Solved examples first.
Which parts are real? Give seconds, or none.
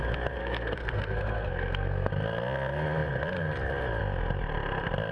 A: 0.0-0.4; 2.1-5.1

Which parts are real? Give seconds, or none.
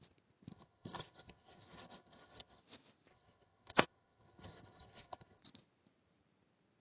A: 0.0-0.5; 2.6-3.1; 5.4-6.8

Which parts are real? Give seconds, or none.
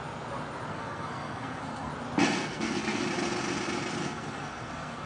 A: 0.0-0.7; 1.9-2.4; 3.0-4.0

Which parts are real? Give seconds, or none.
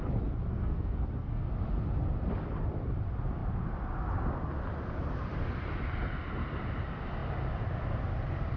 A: 0.0-0.5; 1.5-8.6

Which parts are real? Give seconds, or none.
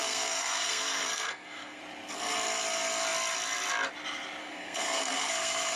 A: 1.8-4.4